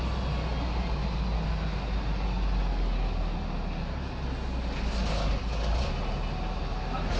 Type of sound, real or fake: real